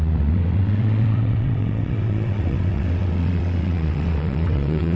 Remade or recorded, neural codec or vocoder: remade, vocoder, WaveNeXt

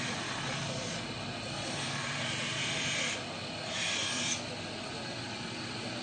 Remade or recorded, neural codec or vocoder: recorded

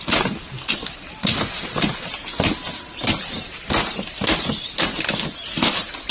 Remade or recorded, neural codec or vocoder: recorded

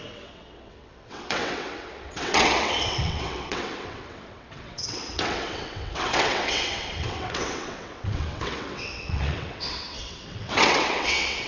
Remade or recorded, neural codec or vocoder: remade, vocoder, WaveNeXt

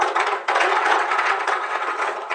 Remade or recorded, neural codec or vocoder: remade, vocoder, WaveNeXt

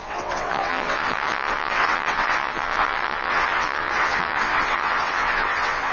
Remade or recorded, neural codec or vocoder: remade, vocoder, WaveNeXt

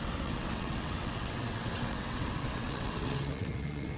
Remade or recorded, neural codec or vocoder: remade, vocoder, WaveNeXt